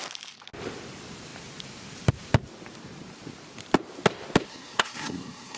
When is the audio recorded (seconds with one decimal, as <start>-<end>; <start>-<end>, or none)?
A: 0.0-4.5